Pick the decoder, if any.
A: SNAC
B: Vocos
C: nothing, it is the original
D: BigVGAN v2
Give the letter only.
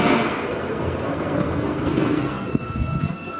A